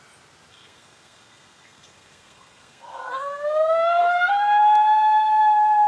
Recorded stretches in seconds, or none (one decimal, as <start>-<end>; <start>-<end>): 0.0-0.5; 4.0-5.9